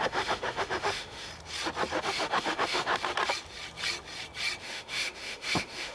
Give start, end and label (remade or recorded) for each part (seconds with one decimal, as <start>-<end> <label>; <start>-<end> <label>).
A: 0.0-1.3 remade; 1.3-2.0 recorded; 2.0-2.9 remade; 2.9-4.6 recorded; 4.6-5.9 remade